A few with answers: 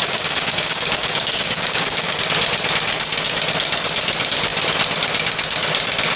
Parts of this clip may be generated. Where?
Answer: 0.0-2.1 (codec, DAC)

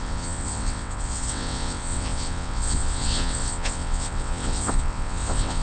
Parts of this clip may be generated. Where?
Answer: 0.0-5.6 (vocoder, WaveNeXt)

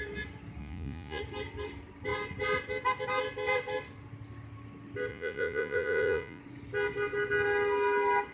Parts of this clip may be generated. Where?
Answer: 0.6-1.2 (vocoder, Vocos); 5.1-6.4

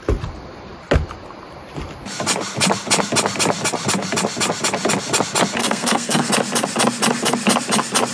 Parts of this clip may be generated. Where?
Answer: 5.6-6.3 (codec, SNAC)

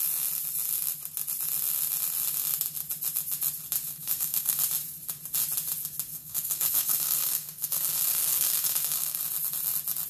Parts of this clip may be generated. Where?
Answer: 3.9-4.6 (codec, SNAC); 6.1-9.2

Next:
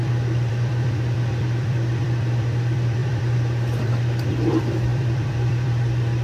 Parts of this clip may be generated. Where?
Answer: 0.0-6.2 (vocoder, BigVGAN v2)

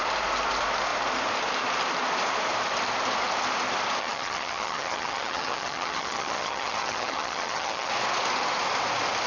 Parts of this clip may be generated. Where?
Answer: 4.0-7.9 (vocoder, HiFi-GAN)